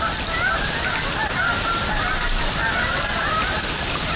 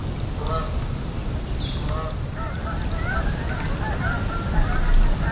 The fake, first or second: first